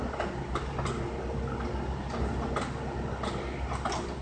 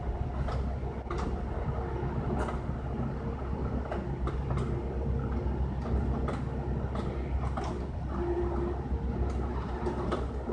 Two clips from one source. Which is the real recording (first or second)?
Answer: first